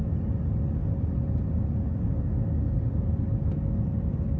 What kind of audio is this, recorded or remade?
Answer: recorded